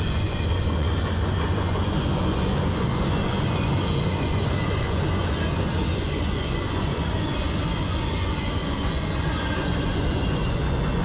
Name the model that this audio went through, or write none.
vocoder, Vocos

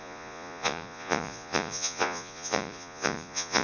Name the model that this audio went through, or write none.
vocoder, Vocos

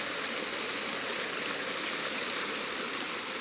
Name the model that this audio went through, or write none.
none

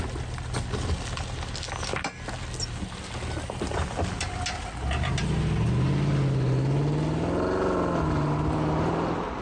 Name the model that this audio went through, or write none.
none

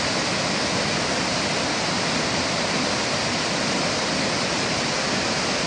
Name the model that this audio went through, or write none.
none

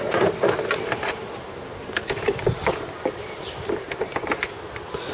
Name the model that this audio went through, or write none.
none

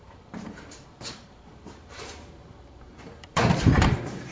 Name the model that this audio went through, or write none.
vocoder, BigVGAN v2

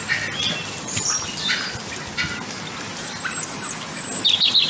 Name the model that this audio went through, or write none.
none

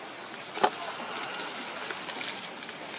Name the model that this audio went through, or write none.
none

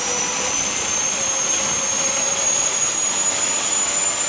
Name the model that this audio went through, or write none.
none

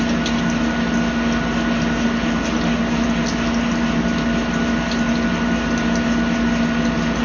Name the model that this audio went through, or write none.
none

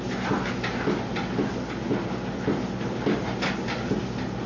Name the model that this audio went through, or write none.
none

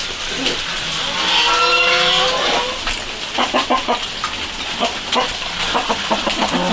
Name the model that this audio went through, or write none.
none